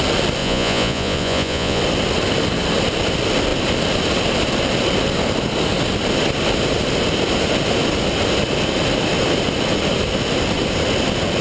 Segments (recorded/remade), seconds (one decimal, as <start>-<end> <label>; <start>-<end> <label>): 0.0-0.4 recorded; 0.4-1.8 remade; 1.8-11.4 recorded